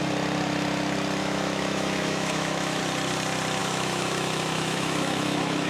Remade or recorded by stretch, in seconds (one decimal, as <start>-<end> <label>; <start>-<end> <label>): 0.0-1.2 recorded; 1.2-2.8 remade; 2.8-3.6 recorded; 3.6-5.7 remade